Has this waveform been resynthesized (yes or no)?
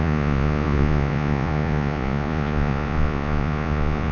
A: yes